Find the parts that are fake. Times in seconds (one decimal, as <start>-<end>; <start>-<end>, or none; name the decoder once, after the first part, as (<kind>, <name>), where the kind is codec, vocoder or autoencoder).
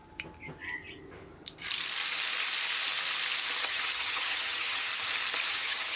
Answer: 3.6-4.9 (vocoder, HiFi-GAN); 5.5-6.0